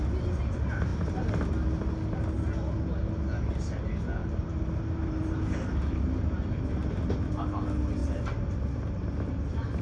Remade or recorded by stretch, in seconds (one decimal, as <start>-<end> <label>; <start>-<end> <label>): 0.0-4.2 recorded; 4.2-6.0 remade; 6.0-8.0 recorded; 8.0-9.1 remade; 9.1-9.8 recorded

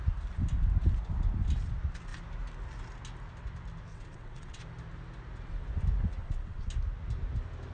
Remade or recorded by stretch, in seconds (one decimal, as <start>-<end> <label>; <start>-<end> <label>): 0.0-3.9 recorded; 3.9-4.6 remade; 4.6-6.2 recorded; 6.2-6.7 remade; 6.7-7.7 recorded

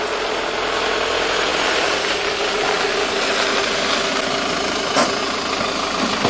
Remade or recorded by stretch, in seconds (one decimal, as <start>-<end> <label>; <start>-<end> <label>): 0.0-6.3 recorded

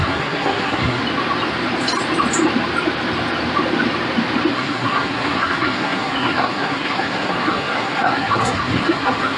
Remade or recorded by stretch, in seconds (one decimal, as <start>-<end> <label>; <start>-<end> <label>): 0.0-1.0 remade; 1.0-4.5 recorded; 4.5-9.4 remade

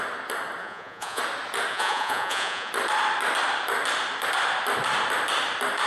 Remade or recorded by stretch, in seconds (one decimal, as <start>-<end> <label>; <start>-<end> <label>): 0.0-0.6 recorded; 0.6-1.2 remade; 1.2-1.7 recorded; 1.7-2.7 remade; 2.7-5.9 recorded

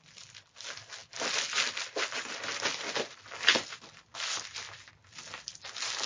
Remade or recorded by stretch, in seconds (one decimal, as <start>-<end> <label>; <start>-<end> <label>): 0.0-6.1 recorded

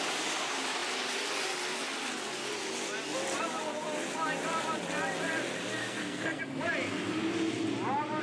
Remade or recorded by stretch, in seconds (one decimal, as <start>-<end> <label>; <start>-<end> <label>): 0.0-5.8 recorded; 5.8-6.4 remade; 6.4-8.2 recorded

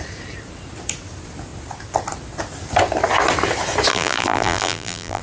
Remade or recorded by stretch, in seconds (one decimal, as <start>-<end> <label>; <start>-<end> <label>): 0.0-3.9 recorded; 3.9-5.2 remade